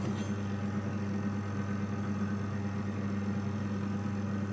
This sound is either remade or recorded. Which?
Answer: recorded